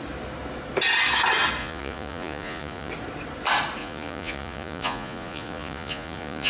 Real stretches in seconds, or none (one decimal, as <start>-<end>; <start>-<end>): 0.0-1.6; 2.9-3.8